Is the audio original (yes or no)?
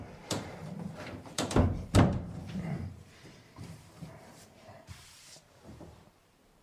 no